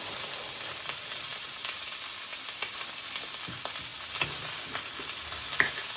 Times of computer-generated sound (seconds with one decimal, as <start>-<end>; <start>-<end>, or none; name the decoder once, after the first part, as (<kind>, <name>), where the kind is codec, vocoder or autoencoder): none